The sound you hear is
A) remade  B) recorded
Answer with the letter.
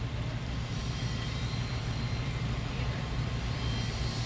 A